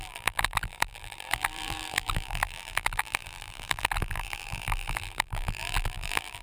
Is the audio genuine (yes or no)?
no